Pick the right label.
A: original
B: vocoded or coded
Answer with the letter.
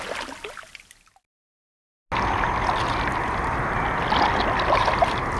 A